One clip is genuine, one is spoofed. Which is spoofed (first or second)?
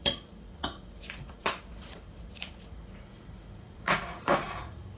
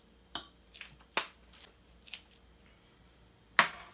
first